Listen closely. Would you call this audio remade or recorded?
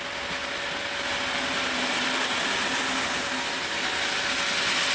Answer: recorded